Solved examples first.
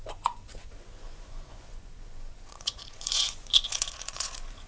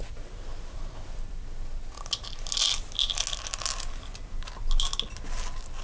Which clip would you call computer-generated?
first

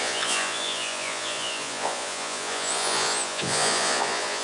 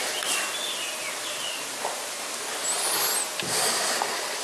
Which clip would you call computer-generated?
first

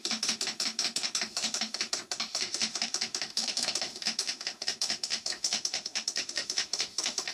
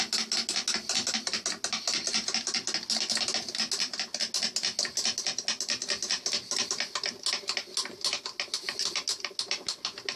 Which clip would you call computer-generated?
first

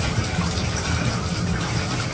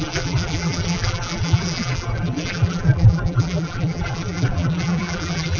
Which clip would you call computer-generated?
second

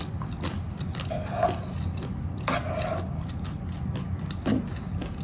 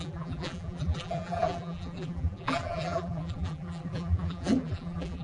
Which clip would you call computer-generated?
second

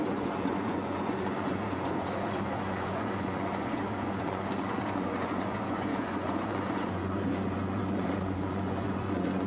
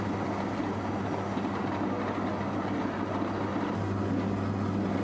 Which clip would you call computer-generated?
first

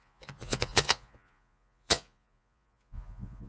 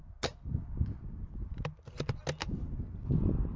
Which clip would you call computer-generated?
first